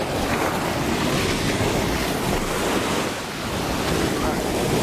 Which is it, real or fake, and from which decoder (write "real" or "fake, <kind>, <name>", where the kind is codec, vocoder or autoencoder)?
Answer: real